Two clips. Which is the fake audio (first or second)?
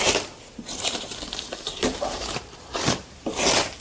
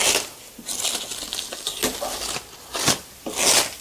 first